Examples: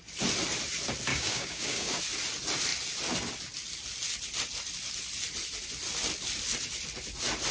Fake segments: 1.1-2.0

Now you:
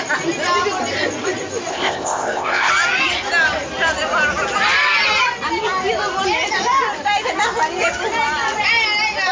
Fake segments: 1.7-2.7

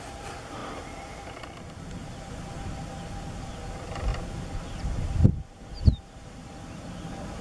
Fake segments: none

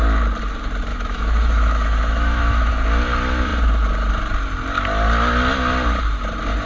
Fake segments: 0.9-2.7